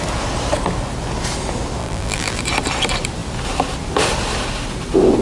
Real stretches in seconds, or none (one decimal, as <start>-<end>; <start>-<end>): 0.0-1.8; 2.4-5.2

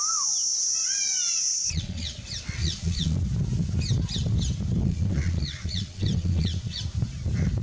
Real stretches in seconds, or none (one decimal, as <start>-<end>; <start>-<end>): 0.0-1.5; 2.2-2.6; 3.2-4.8; 6.8-7.6

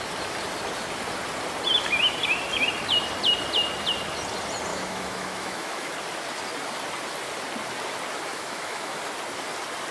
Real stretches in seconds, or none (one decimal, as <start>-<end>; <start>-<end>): 0.0-4.7; 5.9-8.3; 9.0-9.9